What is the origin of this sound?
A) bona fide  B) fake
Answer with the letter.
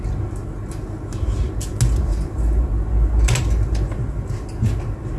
A